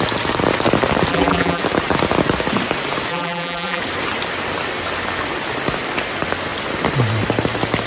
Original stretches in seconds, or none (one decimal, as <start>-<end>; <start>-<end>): 0.0-1.1; 1.6-3.1; 3.8-7.9

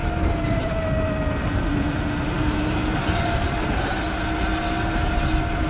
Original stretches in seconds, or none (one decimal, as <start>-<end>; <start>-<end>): 0.0-5.7

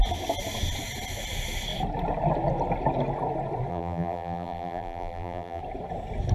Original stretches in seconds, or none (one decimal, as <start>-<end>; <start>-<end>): 0.0-3.7; 5.6-6.3

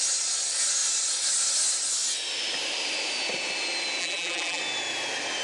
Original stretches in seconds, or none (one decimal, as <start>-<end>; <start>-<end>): 0.0-4.0; 4.6-5.4

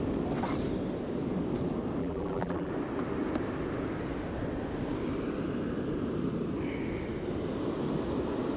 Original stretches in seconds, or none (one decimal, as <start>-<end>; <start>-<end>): 0.0-2.0; 2.7-8.6

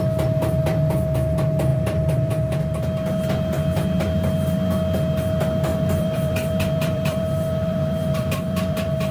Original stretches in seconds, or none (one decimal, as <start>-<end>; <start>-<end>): 0.0-1.7; 2.3-5.7

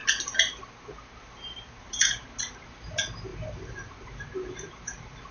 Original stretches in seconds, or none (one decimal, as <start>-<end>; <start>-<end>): none

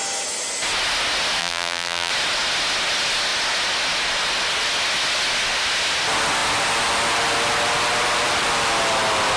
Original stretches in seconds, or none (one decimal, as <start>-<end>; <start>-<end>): 0.0-1.4; 2.1-9.4